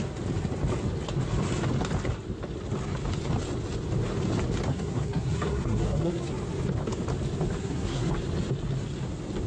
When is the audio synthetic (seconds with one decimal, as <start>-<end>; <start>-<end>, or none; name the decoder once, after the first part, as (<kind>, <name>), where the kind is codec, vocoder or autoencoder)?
4.7-6.3 (codec, SNAC); 7.6-8.1